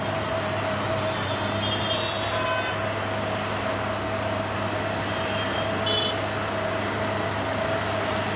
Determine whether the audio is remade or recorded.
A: recorded